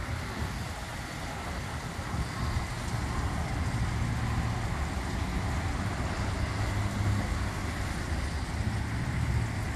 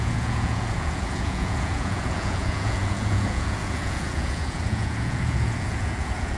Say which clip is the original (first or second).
first